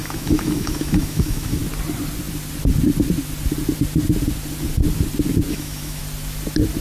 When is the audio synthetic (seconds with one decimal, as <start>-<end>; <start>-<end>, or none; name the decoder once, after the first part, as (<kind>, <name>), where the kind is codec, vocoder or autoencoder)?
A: 0.0-1.6 (autoencoder, DAC-VAE); 5.5-6.0